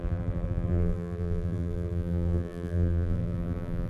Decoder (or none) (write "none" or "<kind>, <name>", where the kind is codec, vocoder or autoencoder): vocoder, BigVGAN v2